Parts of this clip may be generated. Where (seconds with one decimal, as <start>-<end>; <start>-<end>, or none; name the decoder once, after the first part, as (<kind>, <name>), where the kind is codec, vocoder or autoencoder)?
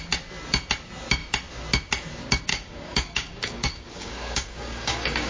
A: 2.5-5.3 (codec, DAC)